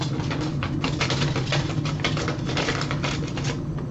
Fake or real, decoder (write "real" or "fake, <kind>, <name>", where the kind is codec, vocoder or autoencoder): real